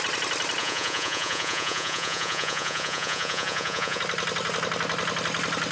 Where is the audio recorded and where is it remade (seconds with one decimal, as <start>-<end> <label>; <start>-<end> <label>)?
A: 0.0-0.6 recorded; 0.6-4.0 remade; 4.0-5.7 recorded